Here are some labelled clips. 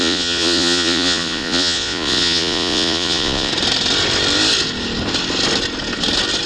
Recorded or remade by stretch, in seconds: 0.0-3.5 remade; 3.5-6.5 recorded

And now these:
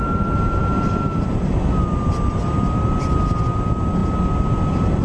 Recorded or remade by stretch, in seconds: 0.0-5.0 recorded

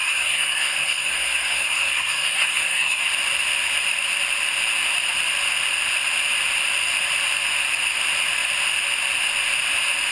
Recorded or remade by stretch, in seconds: 0.0-3.1 remade; 3.1-10.1 recorded

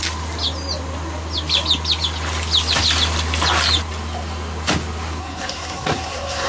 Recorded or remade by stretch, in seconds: 0.0-5.2 recorded; 5.2-6.5 remade

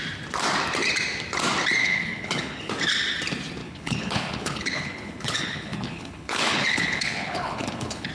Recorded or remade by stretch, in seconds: 0.0-1.8 recorded; 1.8-2.7 remade; 2.7-3.6 recorded; 3.6-8.1 remade

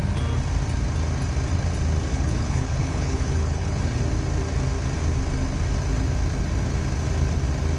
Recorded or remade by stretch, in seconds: 0.0-2.1 recorded; 2.1-4.0 remade; 4.0-7.8 recorded